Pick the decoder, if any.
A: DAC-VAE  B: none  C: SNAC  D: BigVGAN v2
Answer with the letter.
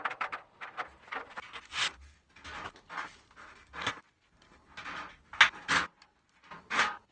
B